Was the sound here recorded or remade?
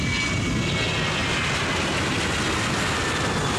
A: recorded